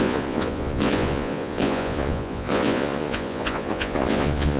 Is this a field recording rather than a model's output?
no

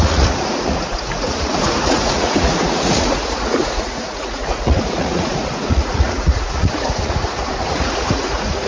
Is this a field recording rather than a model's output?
no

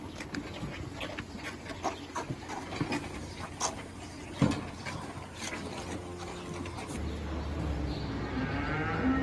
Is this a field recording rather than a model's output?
yes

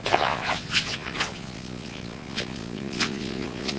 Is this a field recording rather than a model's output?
no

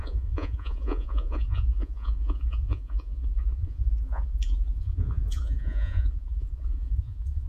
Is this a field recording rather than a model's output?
no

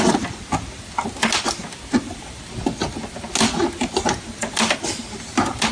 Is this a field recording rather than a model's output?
yes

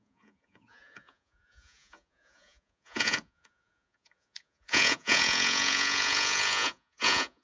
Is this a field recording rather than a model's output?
no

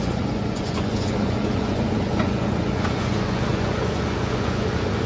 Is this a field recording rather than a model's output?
no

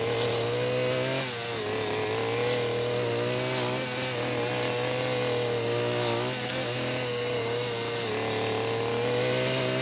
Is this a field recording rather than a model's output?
yes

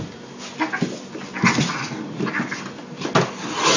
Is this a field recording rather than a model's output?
yes